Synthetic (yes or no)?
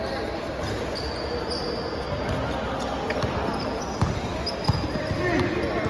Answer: no